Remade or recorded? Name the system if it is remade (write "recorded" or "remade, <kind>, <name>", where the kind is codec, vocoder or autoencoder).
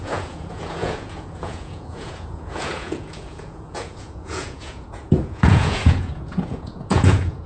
remade, vocoder, Vocos